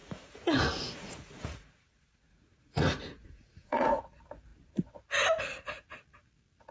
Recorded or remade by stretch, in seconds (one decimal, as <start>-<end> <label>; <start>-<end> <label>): 0.0-4.0 remade; 4.0-6.7 recorded